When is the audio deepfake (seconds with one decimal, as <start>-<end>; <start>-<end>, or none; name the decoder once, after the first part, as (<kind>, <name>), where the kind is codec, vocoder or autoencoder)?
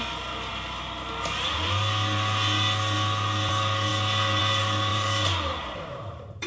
4.9-6.5 (vocoder, BigVGAN v2)